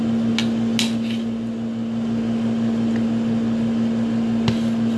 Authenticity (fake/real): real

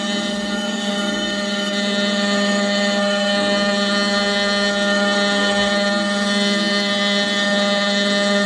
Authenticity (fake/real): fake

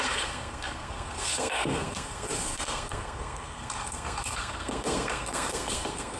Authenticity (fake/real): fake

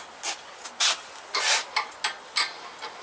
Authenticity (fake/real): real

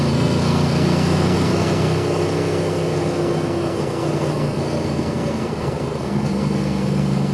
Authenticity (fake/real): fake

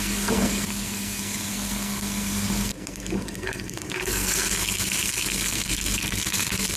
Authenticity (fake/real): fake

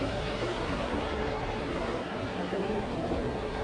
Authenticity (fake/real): fake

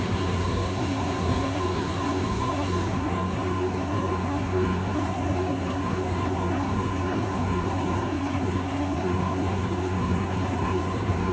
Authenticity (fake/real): fake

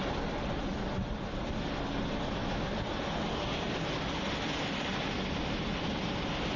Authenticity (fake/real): real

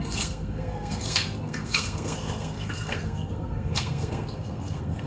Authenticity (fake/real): fake